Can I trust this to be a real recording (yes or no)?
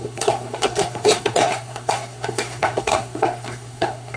no